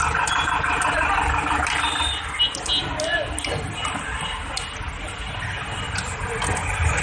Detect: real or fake real